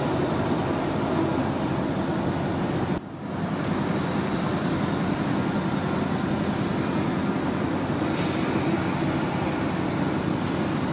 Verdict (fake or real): real